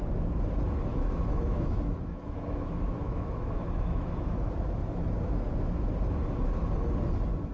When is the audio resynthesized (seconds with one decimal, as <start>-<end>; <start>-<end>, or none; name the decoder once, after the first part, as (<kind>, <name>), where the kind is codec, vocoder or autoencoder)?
0.9-4.5 (autoencoder, DAC-VAE)